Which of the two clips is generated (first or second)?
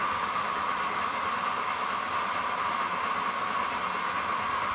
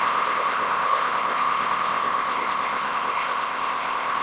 second